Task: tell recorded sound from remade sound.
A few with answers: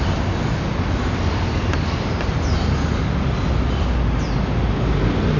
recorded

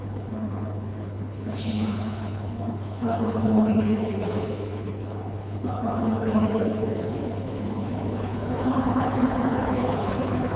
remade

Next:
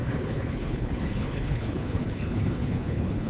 remade